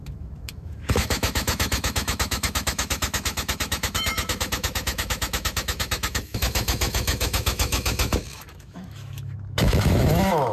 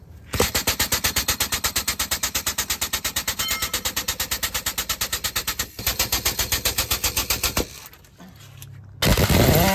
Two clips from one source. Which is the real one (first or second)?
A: second